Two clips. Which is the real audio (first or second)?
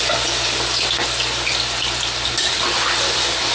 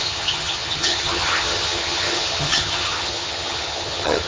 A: first